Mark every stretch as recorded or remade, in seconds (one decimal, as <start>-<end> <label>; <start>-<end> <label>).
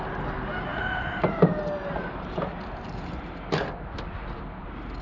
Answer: 0.0-5.0 recorded